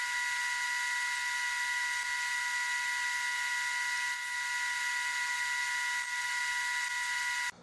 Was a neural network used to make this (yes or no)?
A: no